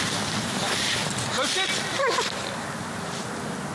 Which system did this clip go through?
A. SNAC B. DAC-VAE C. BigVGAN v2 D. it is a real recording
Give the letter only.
D